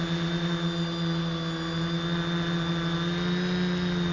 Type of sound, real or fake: real